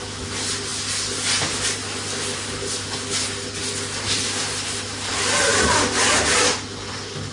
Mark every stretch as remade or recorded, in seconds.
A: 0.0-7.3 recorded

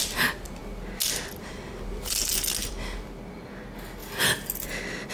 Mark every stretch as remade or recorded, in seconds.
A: 0.0-5.1 recorded

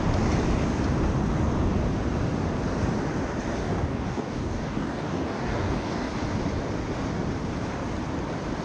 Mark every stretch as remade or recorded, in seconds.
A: 0.0-3.6 recorded; 3.6-6.1 remade; 6.1-8.6 recorded

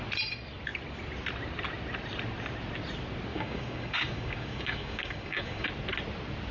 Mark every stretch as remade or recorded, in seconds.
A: 0.0-3.3 recorded; 3.3-5.7 remade; 5.7-6.5 recorded

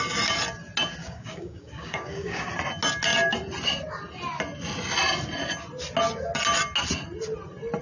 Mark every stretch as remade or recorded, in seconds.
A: 0.0-1.0 recorded; 1.0-2.5 remade; 2.5-7.8 recorded